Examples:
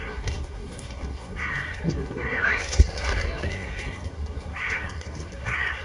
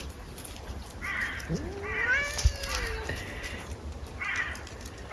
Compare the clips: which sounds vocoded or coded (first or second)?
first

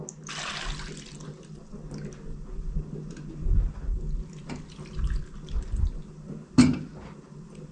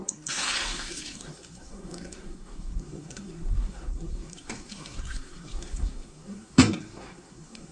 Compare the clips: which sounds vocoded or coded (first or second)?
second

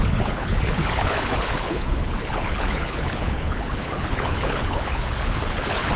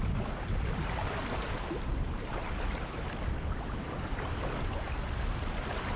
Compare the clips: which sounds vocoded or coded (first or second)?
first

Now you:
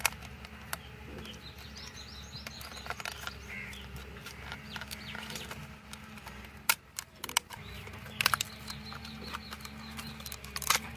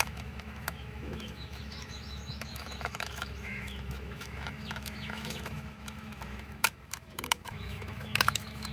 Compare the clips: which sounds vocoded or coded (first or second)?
second